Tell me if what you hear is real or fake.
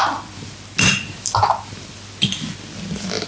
real